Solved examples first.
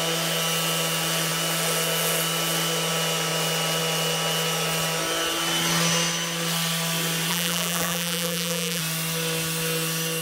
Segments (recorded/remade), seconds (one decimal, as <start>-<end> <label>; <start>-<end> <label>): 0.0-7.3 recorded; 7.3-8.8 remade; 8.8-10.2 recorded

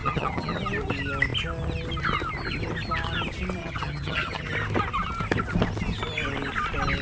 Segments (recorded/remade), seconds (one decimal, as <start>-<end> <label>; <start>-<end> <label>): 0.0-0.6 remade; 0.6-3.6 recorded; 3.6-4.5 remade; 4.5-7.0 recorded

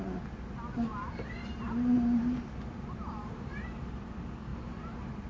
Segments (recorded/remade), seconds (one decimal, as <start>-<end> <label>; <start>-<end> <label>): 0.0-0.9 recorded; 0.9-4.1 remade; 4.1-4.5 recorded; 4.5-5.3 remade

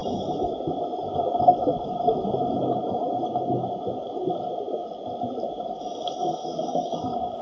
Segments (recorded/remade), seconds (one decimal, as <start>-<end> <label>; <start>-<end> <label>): 0.0-6.2 recorded; 6.2-7.4 remade

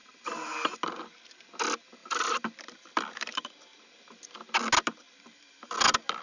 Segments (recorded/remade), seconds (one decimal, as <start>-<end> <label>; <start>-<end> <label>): 0.0-2.0 recorded; 2.0-3.5 remade; 3.5-6.2 recorded